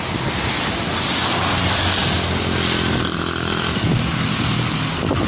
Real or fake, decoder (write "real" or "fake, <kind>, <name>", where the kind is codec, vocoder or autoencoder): real